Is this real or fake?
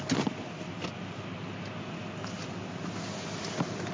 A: real